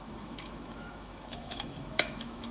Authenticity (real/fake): fake